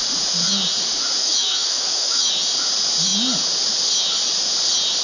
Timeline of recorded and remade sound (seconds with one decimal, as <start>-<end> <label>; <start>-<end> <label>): 0.0-1.2 recorded; 1.2-2.3 remade; 2.3-5.0 recorded